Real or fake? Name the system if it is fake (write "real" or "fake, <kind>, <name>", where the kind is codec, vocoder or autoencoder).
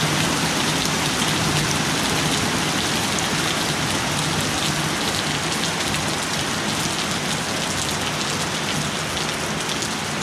real